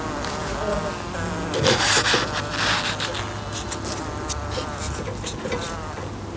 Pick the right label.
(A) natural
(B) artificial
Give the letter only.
A